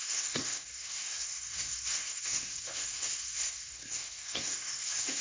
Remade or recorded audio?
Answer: remade